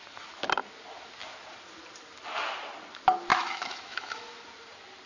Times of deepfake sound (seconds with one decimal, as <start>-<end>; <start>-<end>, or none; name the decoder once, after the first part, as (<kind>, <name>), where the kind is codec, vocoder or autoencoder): 3.3-4.4 (autoencoder, DAC-VAE)

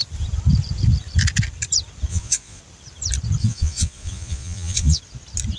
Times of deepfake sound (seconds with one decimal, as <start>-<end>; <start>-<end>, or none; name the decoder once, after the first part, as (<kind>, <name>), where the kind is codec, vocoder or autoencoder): 2.1-2.6 (vocoder, Vocos); 3.4-5.0

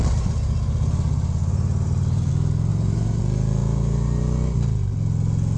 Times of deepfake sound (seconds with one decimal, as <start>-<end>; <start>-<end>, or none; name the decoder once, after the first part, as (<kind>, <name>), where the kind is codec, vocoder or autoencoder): 1.4-2.3 (vocoder, BigVGAN v2); 2.7-3.2; 3.6-4.2

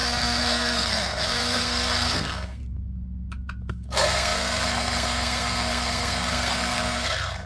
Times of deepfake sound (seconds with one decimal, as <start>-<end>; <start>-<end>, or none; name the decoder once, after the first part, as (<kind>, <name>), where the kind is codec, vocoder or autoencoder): 0.0-2.6 (codec, SNAC); 3.7-7.5

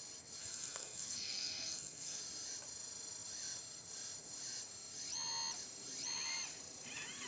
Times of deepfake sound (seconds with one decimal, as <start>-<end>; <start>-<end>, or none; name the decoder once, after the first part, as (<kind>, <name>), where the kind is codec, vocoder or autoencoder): 0.4-2.2 (codec, SNAC)

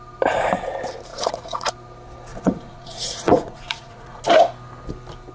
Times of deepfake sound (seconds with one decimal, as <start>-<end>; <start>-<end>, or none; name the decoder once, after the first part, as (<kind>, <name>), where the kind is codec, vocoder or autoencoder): 1.1-1.7 (vocoder, Vocos); 2.3-4.2

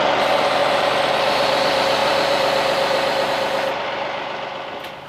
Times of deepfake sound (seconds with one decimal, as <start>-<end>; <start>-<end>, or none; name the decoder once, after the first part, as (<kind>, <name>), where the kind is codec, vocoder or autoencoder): 0.6-1.1 (vocoder, BigVGAN v2); 2.0-3.3

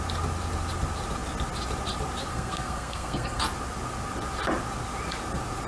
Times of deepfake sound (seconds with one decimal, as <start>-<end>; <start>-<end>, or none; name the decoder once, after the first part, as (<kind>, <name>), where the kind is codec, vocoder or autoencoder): 2.3-3.4 (codec, SNAC)